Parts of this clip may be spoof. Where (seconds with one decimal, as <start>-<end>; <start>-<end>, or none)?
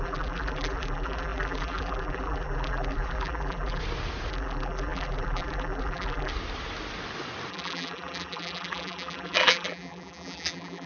0.0-3.8; 4.3-6.3; 7.5-10.9